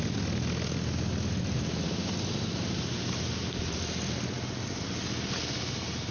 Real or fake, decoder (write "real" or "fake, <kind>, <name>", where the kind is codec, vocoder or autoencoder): real